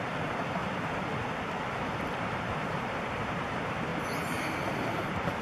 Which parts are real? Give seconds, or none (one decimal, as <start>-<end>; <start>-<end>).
0.6-1.7; 3.9-4.7

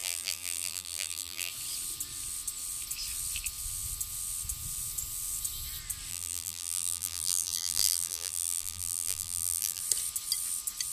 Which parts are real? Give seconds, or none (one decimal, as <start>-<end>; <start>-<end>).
1.5-6.1; 9.8-10.9

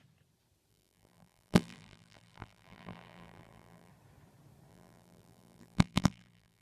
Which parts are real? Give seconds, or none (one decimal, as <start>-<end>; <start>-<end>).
0.0-0.7; 3.9-4.7

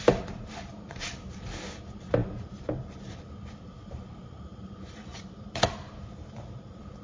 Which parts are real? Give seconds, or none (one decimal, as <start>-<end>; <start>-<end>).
none